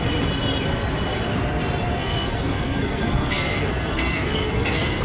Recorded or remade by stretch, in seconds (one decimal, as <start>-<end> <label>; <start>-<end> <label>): 0.0-1.9 recorded; 1.9-5.0 remade